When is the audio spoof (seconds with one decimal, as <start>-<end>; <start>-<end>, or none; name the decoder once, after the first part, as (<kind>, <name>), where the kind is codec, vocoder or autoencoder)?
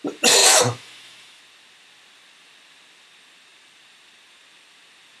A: 0.4-1.4 (autoencoder, DAC-VAE)